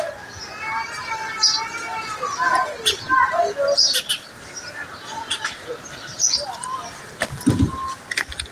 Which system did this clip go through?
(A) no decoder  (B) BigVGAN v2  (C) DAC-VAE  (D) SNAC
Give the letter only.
A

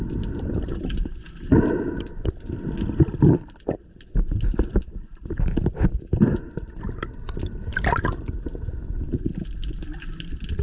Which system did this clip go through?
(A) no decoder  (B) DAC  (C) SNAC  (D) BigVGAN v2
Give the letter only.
A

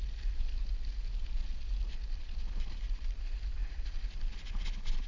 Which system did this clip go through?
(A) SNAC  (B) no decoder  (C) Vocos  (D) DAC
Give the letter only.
B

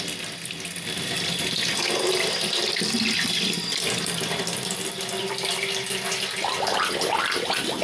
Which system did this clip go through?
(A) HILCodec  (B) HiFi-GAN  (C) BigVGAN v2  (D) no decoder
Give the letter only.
D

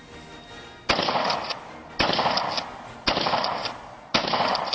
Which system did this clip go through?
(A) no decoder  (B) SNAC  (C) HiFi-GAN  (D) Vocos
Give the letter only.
A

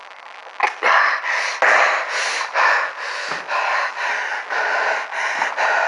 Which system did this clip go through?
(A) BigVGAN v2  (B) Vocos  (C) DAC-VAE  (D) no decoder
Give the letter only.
D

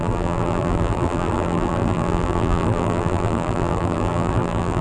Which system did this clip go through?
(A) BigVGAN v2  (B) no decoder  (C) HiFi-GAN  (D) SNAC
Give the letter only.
A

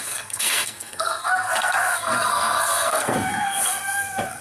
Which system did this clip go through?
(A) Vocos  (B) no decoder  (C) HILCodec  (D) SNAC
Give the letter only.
D